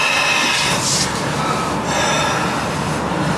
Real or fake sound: real